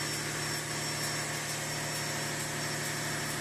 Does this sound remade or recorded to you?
recorded